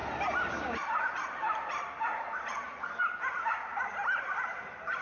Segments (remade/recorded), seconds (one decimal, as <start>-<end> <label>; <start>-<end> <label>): 0.0-5.0 recorded